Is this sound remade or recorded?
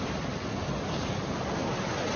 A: recorded